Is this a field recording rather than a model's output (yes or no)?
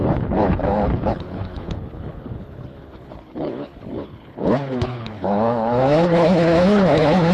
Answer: no